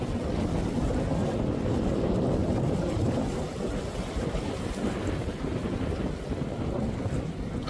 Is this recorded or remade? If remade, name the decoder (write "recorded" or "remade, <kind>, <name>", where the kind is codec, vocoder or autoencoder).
recorded